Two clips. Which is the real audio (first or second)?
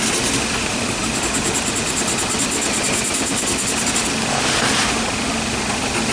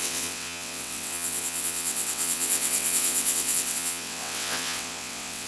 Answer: first